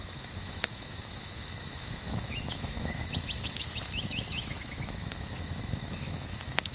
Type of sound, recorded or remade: remade